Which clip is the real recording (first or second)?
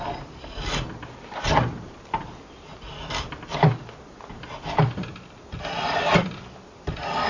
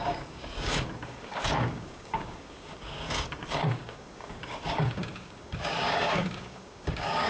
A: first